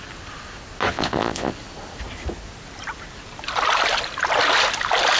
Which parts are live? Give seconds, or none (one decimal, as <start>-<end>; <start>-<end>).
0.0-0.9; 1.5-5.2